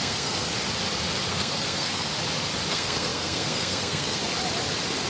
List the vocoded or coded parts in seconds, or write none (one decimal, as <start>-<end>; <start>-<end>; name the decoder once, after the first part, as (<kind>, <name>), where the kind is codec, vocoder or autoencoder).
0.0-0.5 (codec, SNAC); 1.3-2.1; 2.7-4.2